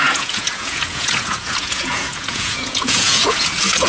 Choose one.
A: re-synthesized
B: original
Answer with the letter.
A